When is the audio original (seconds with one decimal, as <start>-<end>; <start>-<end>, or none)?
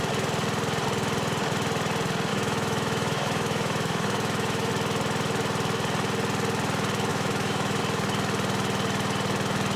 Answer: 0.0-2.3; 4.7-7.1; 7.8-9.8